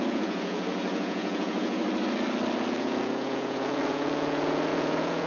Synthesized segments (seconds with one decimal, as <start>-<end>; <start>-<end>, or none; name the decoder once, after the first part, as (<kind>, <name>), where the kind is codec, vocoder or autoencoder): 0.0-1.8 (vocoder, Vocos); 2.7-5.3